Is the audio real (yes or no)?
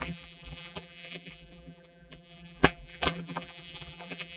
no